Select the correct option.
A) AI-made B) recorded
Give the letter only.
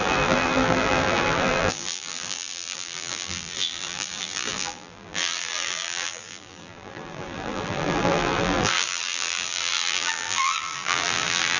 A